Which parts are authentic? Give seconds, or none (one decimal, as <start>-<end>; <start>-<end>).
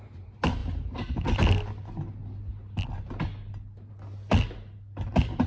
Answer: 0.0-5.5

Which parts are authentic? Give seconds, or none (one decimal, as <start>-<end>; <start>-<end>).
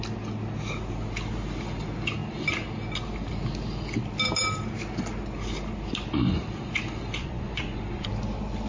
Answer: 0.0-7.2; 8.1-8.7